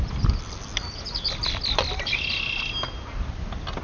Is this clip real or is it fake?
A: real